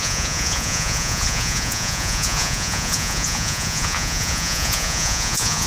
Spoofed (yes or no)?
yes